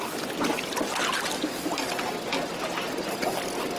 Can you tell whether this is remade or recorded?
recorded